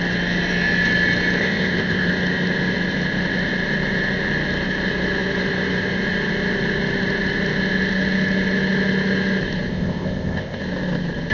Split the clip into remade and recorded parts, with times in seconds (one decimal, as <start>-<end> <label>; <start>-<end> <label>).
0.0-1.4 recorded; 1.4-2.1 remade; 2.1-9.7 recorded; 9.7-10.6 remade; 10.6-11.3 recorded